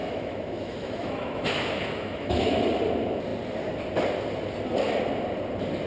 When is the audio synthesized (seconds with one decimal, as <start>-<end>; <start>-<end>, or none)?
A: 0.0-2.6

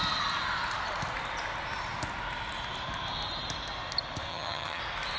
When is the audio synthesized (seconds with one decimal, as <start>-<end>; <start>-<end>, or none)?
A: 4.3-4.8

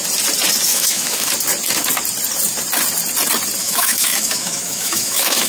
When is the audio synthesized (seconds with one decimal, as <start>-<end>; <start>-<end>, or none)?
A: 0.7-1.3; 3.6-5.5

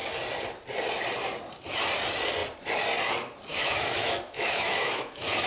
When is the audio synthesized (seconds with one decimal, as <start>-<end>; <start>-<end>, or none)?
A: 3.5-5.5

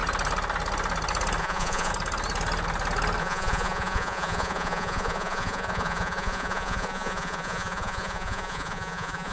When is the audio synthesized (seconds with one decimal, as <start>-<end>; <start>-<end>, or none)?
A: 1.4-1.9; 3.2-9.3

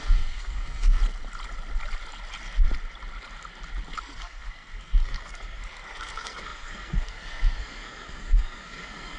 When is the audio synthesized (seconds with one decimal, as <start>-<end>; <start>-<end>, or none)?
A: 0.0-1.0; 4.0-9.2